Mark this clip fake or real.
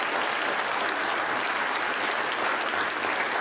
real